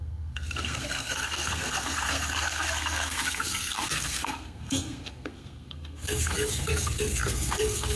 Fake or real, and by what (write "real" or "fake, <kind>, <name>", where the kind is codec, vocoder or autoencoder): fake, codec, SNAC